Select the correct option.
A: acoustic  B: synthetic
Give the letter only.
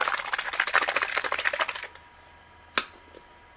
A